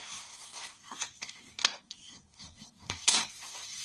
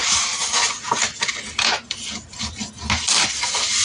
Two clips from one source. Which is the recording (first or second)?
second